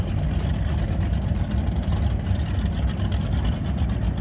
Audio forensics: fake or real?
real